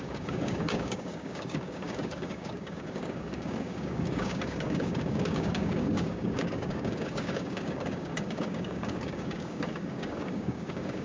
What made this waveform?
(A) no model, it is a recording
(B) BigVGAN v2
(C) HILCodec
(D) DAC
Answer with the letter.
D